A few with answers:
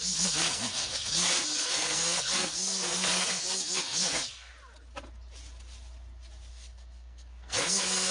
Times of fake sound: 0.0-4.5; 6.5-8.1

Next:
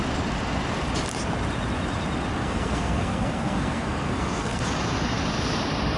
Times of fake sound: 2.4-4.6

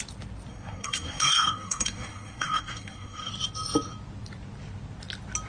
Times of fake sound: 0.5-3.3

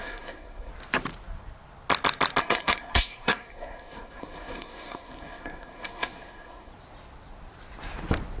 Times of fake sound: 0.0-0.7; 2.4-6.7

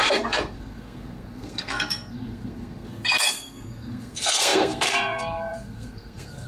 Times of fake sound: 0.0-6.5